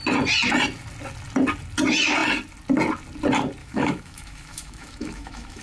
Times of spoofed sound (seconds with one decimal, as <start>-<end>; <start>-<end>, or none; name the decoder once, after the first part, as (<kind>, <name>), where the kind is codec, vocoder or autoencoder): 3.6-5.6 (autoencoder, DAC-VAE)